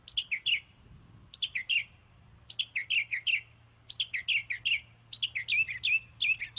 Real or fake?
real